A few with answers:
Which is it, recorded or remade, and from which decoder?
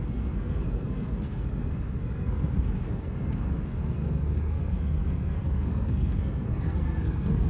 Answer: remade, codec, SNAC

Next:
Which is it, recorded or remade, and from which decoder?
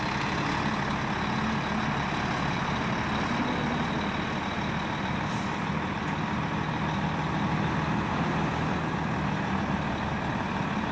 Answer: recorded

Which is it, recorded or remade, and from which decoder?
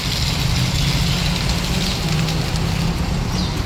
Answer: recorded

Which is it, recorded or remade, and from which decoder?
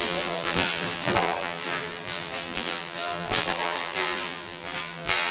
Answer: remade, vocoder, BigVGAN v2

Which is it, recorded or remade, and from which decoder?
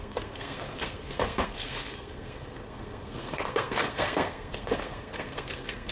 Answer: remade, codec, SNAC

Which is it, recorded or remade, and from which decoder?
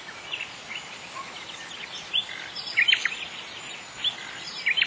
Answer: recorded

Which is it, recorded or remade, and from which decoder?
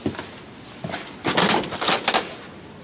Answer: recorded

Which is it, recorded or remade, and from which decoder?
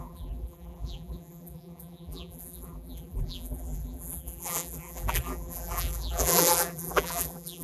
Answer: remade, vocoder, BigVGAN v2